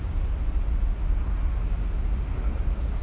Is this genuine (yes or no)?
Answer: yes